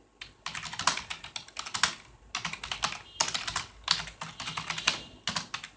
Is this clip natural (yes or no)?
yes